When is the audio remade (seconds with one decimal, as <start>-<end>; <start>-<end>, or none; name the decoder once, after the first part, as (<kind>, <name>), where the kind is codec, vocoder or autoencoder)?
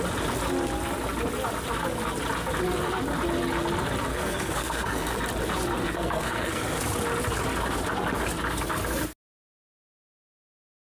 4.1-5.2 (codec, SNAC); 5.8-6.8